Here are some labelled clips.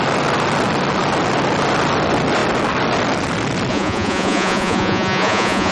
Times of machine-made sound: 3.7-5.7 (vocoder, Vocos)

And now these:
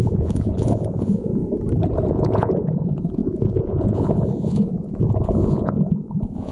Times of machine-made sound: 0.0-1.4 (vocoder, Vocos); 2.1-6.5

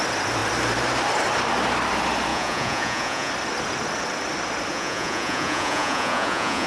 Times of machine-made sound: 2.3-3.3 (vocoder, Vocos); 4.7-6.7

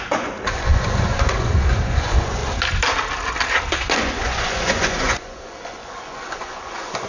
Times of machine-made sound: 0.0-2.4 (vocoder, Vocos); 3.8-7.1

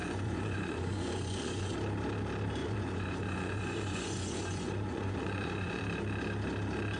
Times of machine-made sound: 0.0-1.7 (vocoder, Vocos); 2.6-5.8